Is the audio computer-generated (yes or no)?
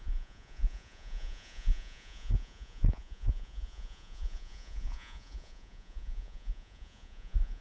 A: yes